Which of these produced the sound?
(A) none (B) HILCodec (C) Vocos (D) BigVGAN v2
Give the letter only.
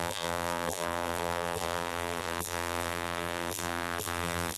D